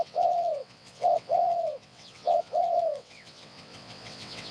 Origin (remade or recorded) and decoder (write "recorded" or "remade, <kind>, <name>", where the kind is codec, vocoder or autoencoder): remade, vocoder, WaveNeXt